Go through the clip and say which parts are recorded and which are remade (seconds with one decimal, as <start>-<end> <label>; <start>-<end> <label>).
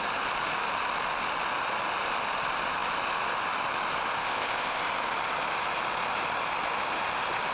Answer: 0.0-4.2 recorded; 4.2-4.8 remade; 4.8-7.5 recorded